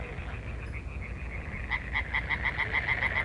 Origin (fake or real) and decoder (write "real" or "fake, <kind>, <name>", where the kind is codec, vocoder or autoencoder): real